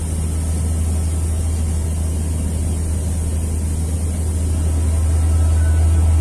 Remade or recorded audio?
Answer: recorded